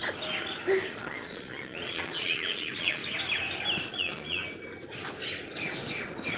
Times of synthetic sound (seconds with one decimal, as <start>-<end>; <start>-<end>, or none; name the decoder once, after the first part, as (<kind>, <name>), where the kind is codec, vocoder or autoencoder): 0.9-3.0 (vocoder, Vocos); 3.9-4.4